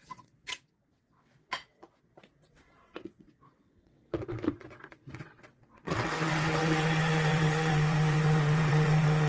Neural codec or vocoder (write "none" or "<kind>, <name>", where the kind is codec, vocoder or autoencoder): vocoder, WaveNeXt